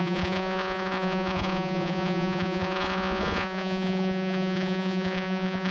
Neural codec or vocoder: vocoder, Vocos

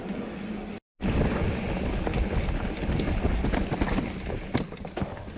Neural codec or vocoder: none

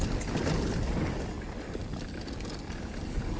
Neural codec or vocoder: none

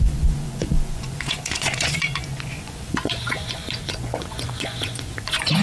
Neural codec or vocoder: vocoder, Vocos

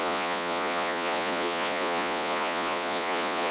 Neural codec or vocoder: vocoder, Vocos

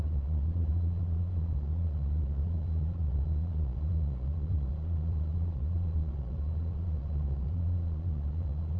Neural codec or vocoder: vocoder, Vocos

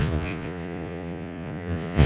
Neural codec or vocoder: vocoder, Vocos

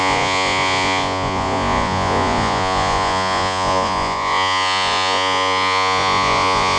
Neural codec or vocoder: vocoder, Vocos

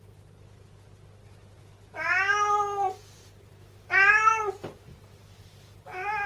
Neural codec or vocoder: none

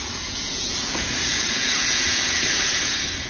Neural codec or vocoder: vocoder, Vocos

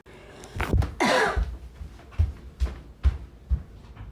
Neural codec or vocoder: none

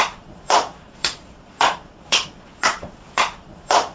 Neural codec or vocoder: vocoder, Vocos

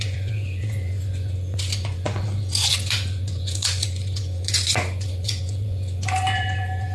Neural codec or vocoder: vocoder, Vocos